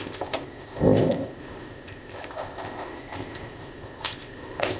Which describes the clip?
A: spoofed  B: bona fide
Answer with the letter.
A